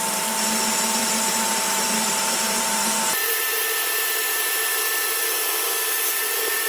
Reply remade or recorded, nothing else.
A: remade